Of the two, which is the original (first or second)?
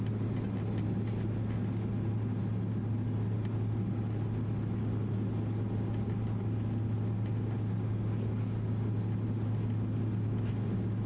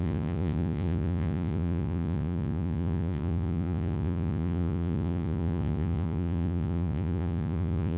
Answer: first